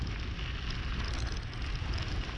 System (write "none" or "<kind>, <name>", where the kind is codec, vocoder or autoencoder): none